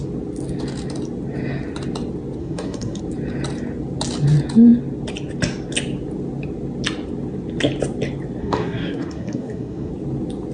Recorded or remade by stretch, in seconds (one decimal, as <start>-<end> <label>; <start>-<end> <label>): 0.0-2.4 recorded; 2.4-3.0 remade; 3.0-8.4 recorded; 8.4-9.9 remade; 9.9-10.5 recorded